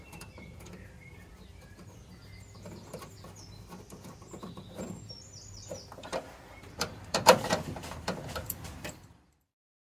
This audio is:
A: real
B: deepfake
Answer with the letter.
B